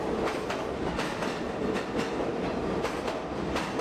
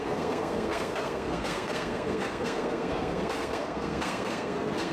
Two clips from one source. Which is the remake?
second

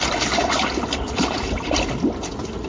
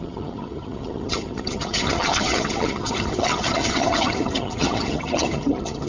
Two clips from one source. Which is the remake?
second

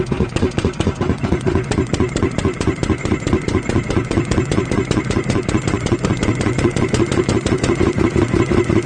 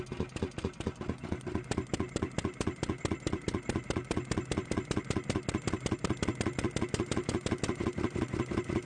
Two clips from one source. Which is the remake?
first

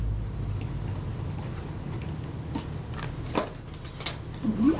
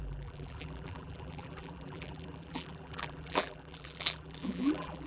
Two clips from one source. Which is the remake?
second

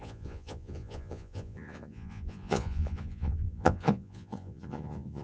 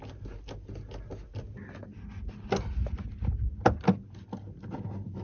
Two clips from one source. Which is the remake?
first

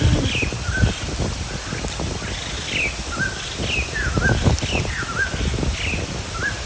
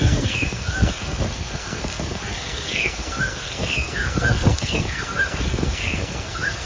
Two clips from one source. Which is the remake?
second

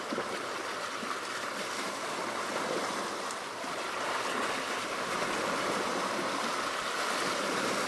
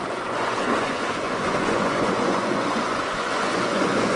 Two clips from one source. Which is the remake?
second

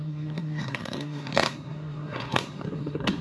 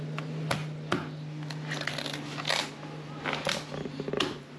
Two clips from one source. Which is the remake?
first